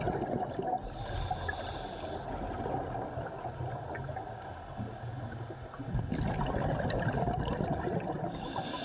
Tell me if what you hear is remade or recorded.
recorded